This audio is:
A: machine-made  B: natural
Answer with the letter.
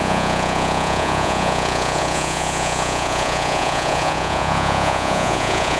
A